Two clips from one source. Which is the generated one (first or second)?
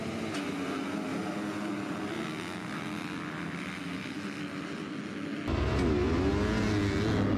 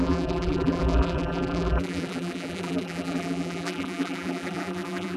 second